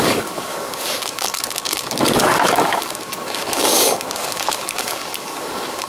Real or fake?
fake